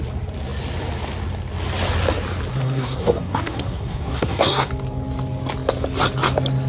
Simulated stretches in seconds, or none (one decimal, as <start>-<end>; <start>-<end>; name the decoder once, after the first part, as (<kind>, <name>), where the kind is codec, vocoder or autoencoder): 2.5-4.7 (codec, SNAC)